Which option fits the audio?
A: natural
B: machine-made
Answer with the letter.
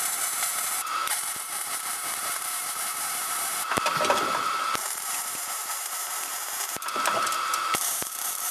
B